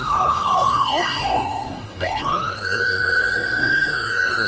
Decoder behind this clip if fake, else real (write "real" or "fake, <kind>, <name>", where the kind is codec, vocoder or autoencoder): fake, codec, SNAC